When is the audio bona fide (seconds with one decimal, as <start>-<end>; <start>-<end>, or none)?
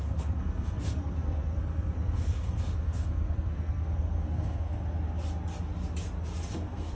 4.8-6.5